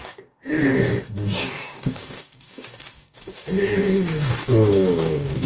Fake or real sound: fake